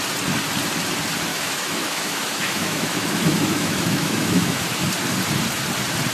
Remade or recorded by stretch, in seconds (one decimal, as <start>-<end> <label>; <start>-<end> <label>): 0.0-1.3 recorded; 1.3-4.8 remade; 4.8-6.1 recorded